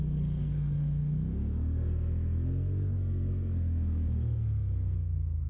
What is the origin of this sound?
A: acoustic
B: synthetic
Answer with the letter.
B